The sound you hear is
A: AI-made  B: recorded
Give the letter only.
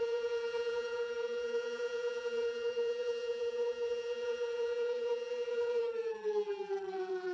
A